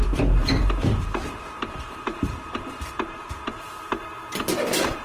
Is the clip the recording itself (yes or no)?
no